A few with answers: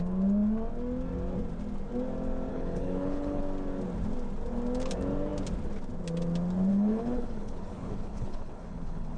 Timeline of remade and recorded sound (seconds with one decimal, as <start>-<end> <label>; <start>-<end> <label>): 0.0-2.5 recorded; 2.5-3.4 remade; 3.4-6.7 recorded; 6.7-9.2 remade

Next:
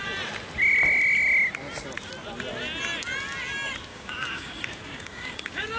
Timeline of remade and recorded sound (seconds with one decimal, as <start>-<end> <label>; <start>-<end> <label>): 0.0-3.9 recorded; 3.9-5.8 remade

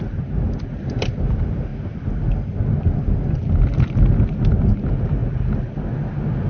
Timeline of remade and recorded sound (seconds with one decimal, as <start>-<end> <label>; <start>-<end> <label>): 0.0-1.7 remade; 1.7-4.7 recorded; 4.7-5.2 remade; 5.2-6.5 recorded

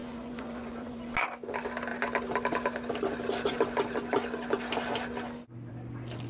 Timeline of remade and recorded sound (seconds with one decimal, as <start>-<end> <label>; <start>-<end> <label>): 0.0-1.1 remade; 1.1-6.3 recorded